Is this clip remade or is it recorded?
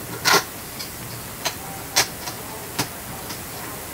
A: recorded